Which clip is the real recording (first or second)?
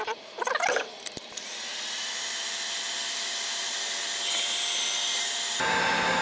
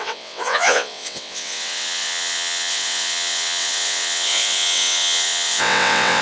first